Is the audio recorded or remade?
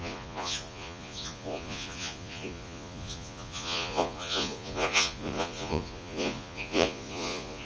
remade